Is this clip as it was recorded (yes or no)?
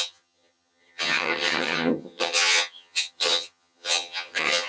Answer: no